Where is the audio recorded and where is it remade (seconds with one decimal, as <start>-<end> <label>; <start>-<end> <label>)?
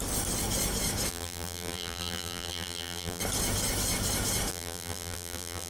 0.0-1.1 recorded; 1.1-3.2 remade; 3.2-4.5 recorded; 4.5-5.7 remade